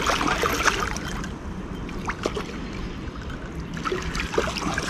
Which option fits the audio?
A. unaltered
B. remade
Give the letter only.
A